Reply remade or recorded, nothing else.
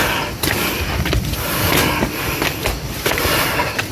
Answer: recorded